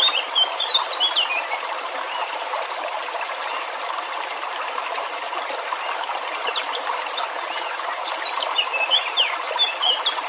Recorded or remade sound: remade